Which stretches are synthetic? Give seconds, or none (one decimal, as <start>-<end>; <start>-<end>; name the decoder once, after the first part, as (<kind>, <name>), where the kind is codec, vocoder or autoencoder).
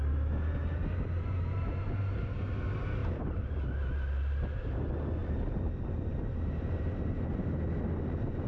0.8-2.6 (vocoder, BigVGAN v2); 3.0-3.5; 5.2-7.6